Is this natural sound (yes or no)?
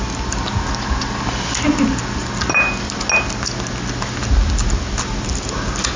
yes